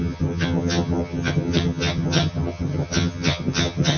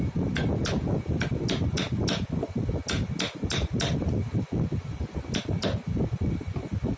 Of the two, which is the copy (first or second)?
first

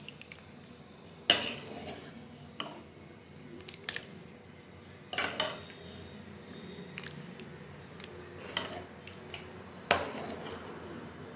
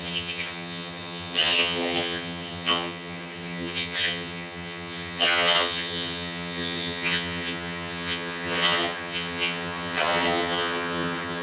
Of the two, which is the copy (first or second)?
second